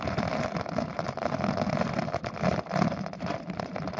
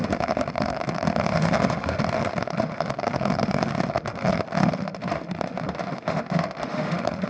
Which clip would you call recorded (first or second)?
first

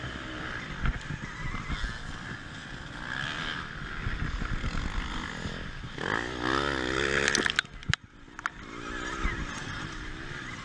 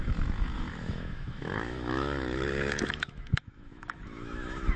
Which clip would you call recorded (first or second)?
first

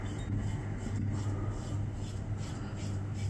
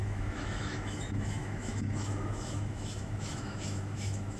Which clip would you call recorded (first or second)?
first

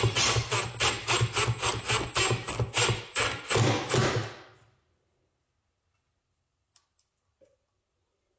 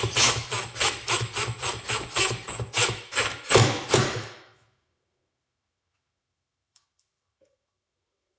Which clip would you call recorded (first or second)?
first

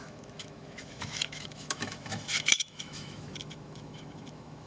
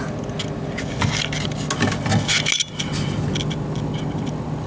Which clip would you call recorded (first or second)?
second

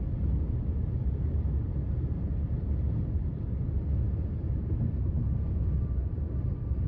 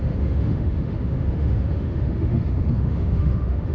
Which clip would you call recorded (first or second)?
first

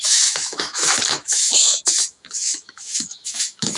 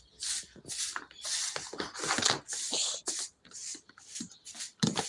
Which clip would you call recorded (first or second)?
second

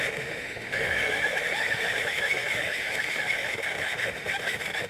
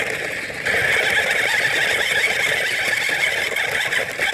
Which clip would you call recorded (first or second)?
second